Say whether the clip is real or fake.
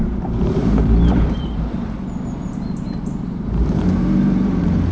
fake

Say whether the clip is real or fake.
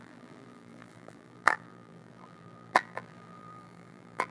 fake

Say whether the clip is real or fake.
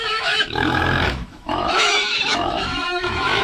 fake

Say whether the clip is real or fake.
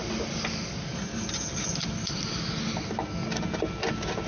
real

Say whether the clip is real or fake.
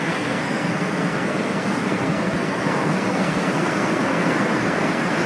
fake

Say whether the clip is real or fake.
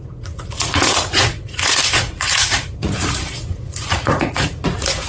fake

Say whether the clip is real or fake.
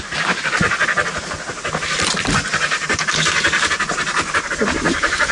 real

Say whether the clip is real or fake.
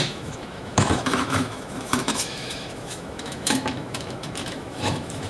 fake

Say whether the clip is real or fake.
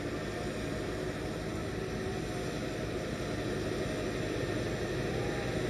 real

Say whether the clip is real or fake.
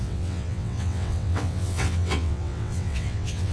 fake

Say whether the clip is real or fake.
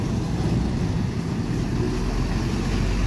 real